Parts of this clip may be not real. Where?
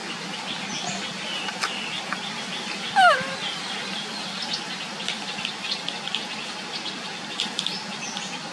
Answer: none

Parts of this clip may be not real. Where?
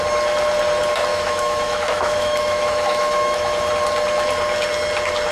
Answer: 1.1-3.7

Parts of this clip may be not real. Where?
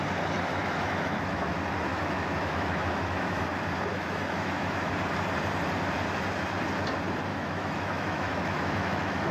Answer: 0.5-1.5; 1.9-3.4; 4.0-4.9; 7.3-9.3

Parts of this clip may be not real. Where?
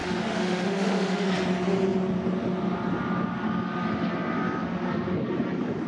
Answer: 0.0-1.3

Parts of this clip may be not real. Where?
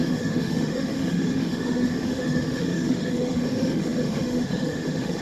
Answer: 0.0-5.2